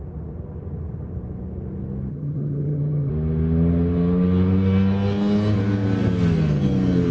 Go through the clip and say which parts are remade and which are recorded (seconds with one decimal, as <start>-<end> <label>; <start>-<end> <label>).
0.0-2.1 recorded; 2.1-3.1 remade; 3.1-7.1 recorded